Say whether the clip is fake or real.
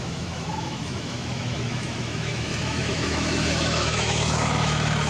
fake